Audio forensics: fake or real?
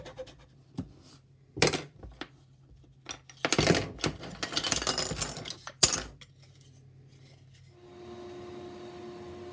real